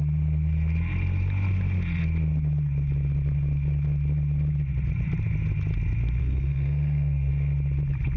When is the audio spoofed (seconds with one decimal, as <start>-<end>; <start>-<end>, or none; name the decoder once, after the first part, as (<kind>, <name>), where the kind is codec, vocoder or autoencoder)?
6.2-7.3 (codec, SNAC)